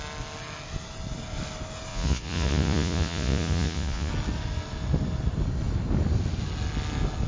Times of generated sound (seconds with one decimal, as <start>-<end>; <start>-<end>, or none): 1.9-4.1